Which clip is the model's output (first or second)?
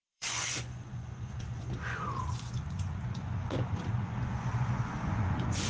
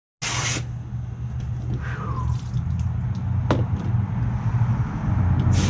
first